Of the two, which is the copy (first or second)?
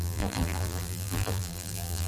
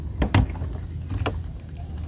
first